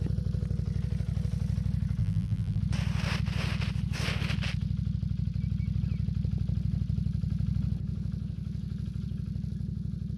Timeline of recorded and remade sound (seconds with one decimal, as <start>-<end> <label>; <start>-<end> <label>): 0.0-2.0 recorded; 2.0-2.6 remade; 2.6-10.2 recorded